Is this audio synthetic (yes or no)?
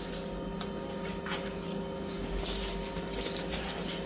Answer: no